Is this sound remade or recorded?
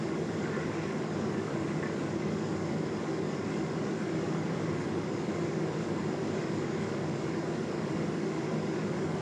remade